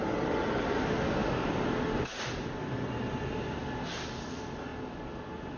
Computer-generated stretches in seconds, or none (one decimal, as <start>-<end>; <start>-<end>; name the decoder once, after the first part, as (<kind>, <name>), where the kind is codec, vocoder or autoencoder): none